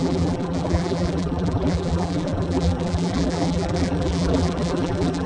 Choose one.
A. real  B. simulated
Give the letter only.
B